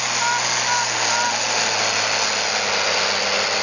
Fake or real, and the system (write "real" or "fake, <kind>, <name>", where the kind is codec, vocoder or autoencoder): real